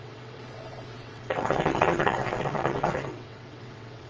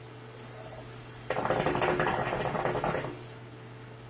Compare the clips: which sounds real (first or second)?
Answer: second